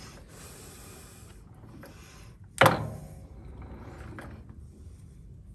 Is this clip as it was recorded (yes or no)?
yes